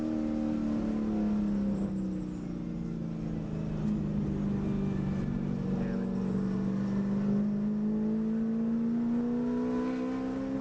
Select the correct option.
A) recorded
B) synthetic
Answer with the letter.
A